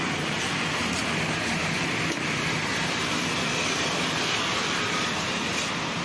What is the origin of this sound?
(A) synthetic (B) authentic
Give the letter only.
B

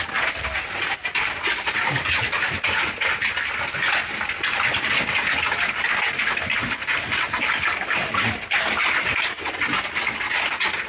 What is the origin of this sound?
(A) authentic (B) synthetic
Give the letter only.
A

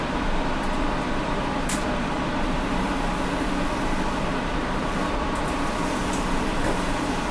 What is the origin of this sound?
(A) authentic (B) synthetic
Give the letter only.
B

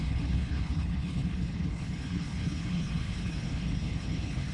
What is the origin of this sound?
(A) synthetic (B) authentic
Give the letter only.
A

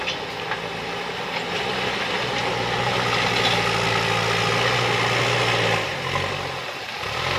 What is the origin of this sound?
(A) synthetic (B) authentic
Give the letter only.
B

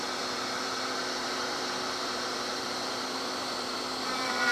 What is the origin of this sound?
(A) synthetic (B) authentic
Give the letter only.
A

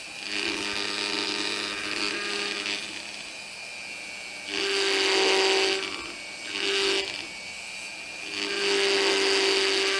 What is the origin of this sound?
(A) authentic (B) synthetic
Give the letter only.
A